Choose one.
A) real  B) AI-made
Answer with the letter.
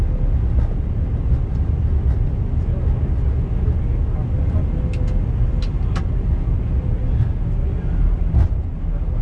A